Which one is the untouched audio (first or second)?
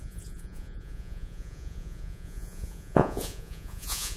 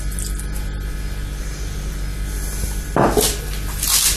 second